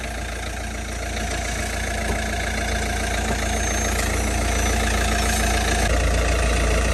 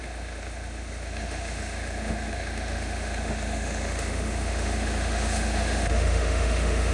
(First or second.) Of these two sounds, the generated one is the second